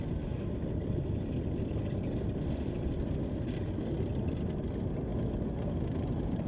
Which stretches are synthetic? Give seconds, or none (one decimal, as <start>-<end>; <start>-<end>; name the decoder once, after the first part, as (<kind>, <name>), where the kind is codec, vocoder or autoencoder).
none